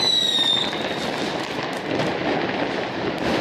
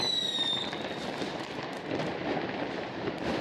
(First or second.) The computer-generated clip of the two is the second